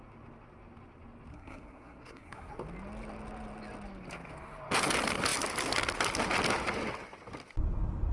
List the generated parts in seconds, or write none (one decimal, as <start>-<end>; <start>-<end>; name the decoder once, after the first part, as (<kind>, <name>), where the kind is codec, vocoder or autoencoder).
1.3-2.5 (codec, SNAC)